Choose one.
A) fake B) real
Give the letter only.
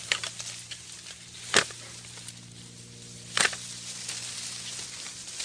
B